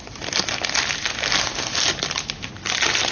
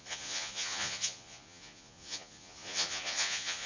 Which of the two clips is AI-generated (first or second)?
second